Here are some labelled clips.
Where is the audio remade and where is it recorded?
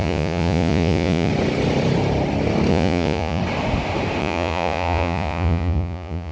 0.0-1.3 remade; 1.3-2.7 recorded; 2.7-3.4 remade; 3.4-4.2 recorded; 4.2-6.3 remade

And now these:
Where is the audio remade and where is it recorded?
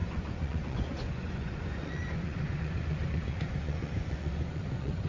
0.0-5.1 remade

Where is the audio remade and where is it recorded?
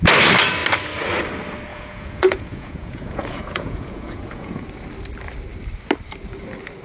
0.0-1.7 recorded; 1.7-4.6 remade; 4.6-6.8 recorded